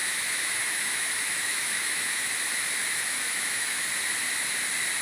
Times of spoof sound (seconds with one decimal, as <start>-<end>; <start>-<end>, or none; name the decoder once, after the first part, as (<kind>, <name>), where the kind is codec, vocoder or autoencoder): 0.0-2.3 (autoencoder, DAC-VAE); 2.8-3.9